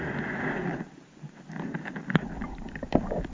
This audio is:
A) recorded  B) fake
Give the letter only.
A